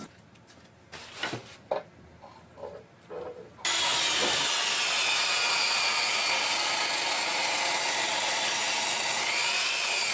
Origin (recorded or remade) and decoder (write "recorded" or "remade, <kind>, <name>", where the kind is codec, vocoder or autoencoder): recorded